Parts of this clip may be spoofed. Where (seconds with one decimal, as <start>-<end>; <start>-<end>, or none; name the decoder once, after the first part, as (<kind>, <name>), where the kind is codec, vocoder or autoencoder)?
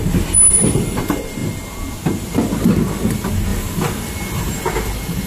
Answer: none